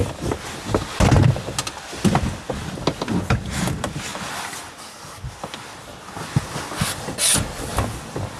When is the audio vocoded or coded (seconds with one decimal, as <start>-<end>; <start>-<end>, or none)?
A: none